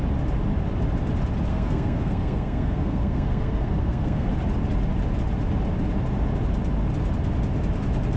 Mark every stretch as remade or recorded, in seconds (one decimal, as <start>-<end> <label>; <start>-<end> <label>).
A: 0.0-1.5 recorded; 1.5-4.3 remade; 4.3-8.2 recorded